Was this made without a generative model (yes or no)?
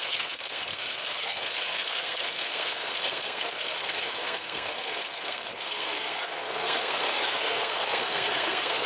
no